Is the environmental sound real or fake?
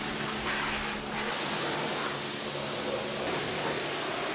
real